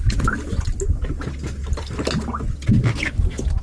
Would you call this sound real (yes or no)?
yes